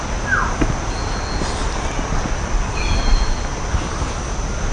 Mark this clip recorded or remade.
recorded